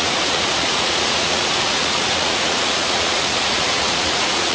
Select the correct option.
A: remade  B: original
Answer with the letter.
A